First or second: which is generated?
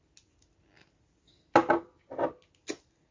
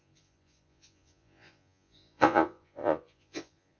second